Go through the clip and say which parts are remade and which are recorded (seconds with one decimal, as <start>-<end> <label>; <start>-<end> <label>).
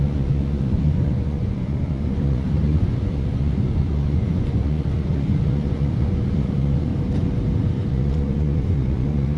0.0-6.9 remade; 6.9-7.7 recorded; 7.7-9.4 remade